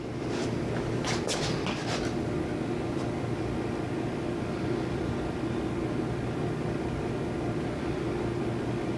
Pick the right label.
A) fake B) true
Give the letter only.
B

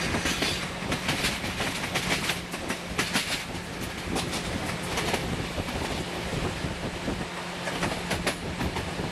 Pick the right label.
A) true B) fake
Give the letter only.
A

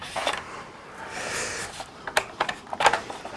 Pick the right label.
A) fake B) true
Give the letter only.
B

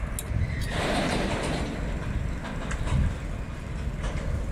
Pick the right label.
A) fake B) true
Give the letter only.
B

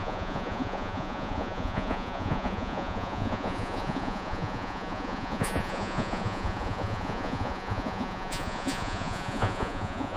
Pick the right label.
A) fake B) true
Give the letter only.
A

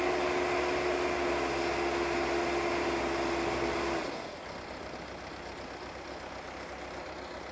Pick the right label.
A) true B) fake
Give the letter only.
A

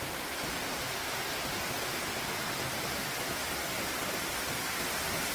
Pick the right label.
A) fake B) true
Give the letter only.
B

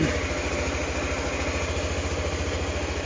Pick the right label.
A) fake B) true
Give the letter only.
B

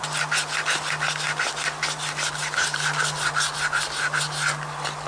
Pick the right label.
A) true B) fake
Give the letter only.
A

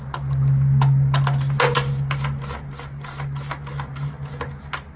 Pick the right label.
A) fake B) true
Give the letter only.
B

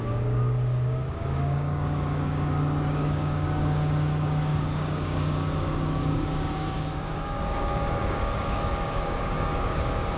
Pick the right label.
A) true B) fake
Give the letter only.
B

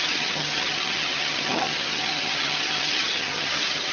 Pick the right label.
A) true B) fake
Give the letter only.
B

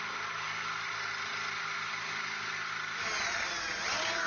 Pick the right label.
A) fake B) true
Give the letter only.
B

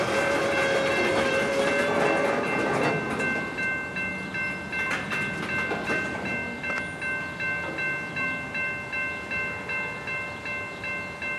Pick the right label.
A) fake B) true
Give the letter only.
B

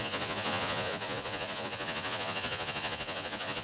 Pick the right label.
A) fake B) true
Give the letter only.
A